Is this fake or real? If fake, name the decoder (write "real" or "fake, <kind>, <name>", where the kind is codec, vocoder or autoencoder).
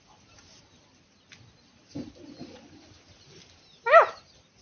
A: real